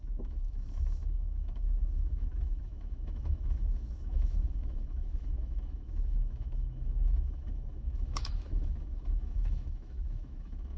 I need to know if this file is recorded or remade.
remade